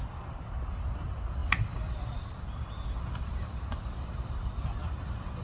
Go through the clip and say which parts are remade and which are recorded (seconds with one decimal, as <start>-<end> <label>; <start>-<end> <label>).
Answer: 0.0-1.4 recorded; 1.4-4.5 remade; 4.5-5.4 recorded